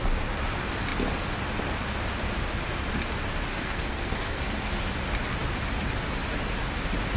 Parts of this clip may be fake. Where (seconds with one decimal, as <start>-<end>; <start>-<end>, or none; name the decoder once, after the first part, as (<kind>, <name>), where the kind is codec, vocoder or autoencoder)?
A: 3.5-4.7 (codec, SNAC)